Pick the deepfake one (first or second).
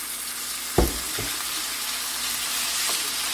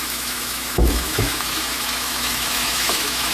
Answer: second